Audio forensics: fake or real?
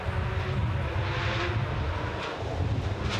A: real